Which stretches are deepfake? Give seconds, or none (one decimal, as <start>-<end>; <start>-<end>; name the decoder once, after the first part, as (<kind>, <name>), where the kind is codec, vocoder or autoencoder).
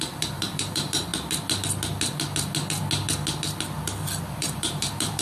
0.0-1.1 (vocoder, BigVGAN v2); 4.2-5.2